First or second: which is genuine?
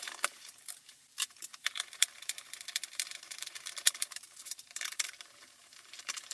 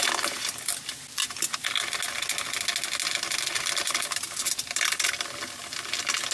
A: second